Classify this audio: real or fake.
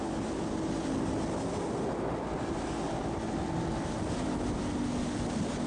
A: real